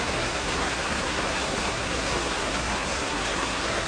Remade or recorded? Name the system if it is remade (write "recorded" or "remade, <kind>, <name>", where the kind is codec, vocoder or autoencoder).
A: remade, codec, SNAC